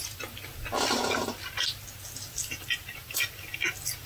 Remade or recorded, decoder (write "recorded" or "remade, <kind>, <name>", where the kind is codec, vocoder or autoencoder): recorded